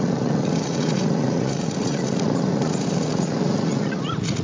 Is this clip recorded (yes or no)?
no